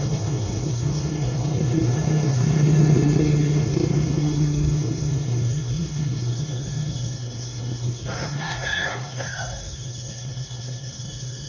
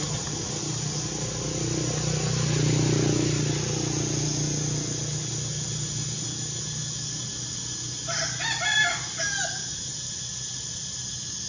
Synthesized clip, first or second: first